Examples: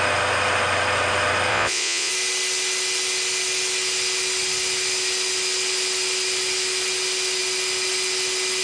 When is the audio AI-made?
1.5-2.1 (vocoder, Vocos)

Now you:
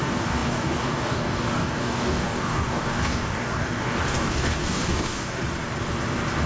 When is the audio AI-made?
0.0-5.4 (codec, DAC)

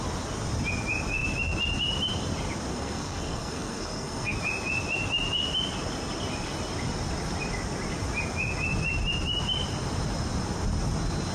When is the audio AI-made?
2.7-4.4 (codec, SNAC)

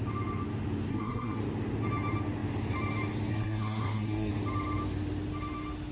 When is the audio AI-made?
0.9-1.4 (codec, SNAC); 3.3-4.3

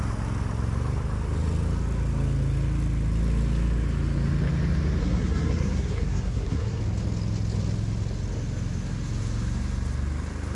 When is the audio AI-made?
5.0-6.8 (codec, SNAC)

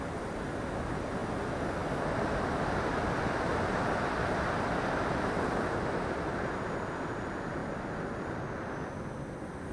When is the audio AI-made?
0.0-1.2 (vocoder, BigVGAN v2); 4.9-7.6; 8.2-9.7

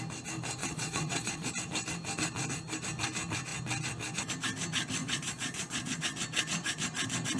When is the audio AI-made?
0.6-1.5 (vocoder, Vocos); 5.0-6.0

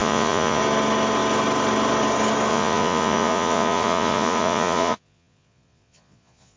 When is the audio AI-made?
0.0-0.6 (vocoder, Vocos); 2.5-6.6